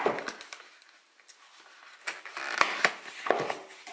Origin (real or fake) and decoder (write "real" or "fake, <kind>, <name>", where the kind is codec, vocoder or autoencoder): real